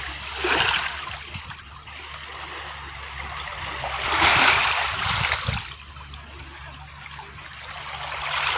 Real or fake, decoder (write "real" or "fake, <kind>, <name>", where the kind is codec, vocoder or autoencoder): fake, vocoder, BigVGAN v2